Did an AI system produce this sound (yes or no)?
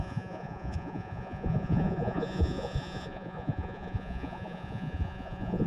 yes